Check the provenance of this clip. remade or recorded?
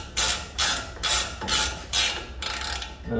recorded